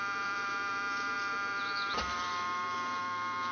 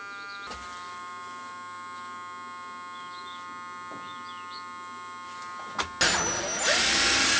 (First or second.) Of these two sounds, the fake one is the first